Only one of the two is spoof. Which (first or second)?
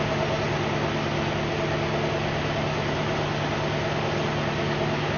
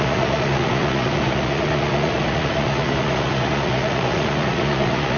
second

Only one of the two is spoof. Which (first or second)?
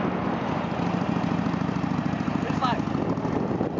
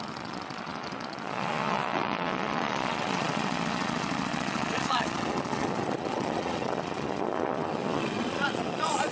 second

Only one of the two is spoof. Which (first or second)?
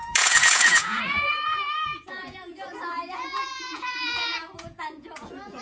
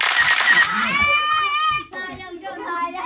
first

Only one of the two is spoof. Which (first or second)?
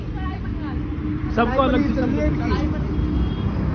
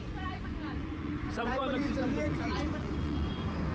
second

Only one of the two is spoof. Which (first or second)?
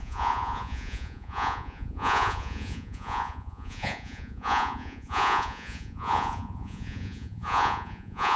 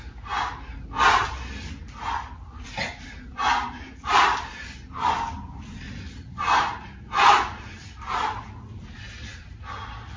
first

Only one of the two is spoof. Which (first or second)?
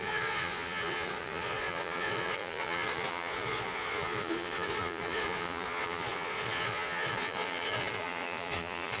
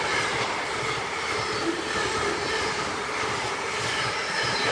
first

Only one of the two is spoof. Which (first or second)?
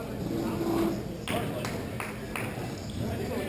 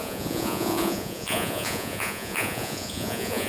second